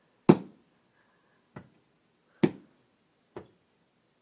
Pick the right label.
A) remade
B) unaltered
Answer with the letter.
B